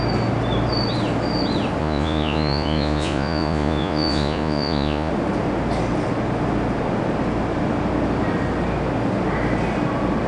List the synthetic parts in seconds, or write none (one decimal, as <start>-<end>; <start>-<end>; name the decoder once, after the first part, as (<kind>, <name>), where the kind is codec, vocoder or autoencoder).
1.8-5.1 (vocoder, Vocos)